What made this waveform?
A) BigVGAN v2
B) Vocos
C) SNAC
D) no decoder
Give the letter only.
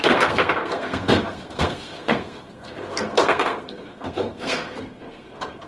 C